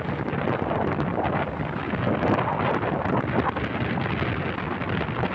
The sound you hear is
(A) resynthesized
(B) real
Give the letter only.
B